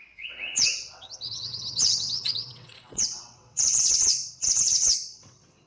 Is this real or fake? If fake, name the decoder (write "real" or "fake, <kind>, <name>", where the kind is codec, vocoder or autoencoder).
fake, vocoder, WaveNeXt